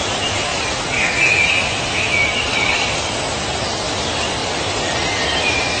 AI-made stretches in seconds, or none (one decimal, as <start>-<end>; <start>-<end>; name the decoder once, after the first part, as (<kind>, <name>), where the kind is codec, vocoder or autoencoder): 2.2-3.3 (vocoder, BigVGAN v2); 4.4-5.2